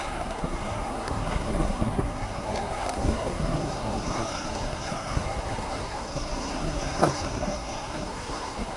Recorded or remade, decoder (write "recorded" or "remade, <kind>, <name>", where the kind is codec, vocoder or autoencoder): remade, codec, SNAC